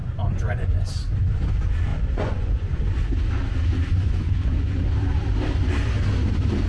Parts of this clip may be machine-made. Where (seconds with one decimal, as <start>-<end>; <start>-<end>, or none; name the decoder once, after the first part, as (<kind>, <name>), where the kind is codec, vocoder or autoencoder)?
0.0-1.1 (vocoder, Vocos); 1.9-2.8; 3.9-4.8